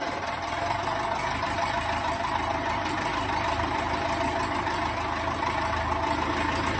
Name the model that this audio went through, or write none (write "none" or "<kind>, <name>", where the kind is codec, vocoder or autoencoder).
none